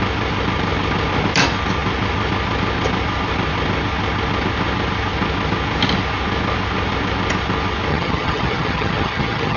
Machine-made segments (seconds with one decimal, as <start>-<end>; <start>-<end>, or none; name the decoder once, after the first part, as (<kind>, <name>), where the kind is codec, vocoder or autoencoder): 7.9-9.6 (vocoder, HiFi-GAN)